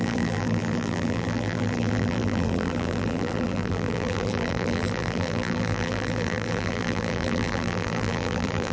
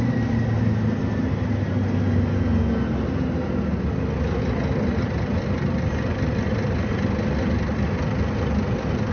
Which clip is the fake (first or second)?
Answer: first